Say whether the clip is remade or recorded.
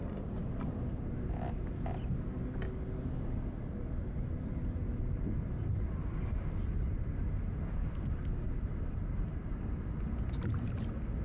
recorded